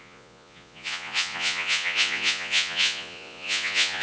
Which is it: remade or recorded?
remade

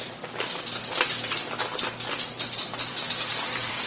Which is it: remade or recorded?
remade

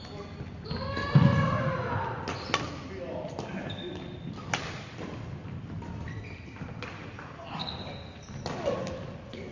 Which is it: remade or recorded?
recorded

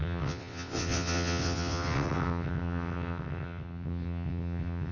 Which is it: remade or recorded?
remade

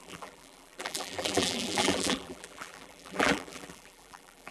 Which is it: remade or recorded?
remade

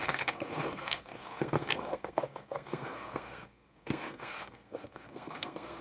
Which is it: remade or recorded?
remade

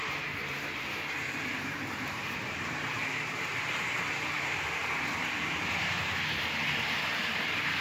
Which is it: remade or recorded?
remade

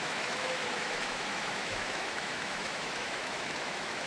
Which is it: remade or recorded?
remade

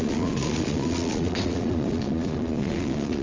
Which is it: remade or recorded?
remade